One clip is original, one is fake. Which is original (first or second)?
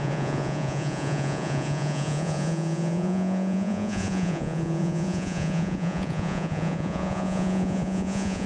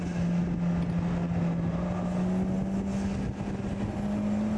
second